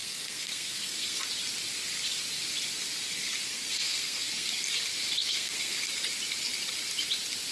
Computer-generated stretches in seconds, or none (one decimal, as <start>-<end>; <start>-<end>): 0.0-1.2; 3.5-4.5; 5.2-5.8